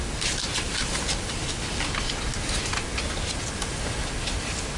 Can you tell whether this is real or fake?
real